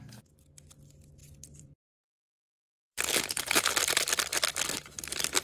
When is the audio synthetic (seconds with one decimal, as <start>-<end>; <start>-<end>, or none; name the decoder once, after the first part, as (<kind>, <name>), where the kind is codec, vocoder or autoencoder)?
1.2-3.9 (vocoder, BigVGAN v2); 4.3-5.0